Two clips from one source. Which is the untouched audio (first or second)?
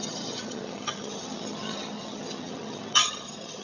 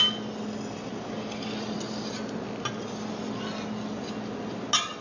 second